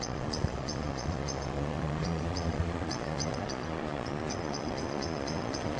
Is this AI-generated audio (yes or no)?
yes